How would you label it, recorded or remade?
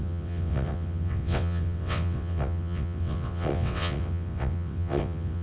remade